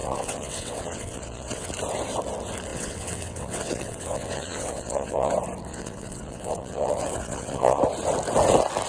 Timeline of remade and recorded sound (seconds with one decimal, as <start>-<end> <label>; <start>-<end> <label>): 0.0-1.7 remade; 1.7-2.7 recorded; 2.7-5.3 remade; 5.3-5.7 recorded; 5.7-7.8 remade; 7.8-8.9 recorded